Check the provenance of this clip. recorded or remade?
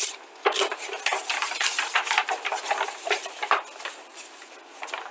recorded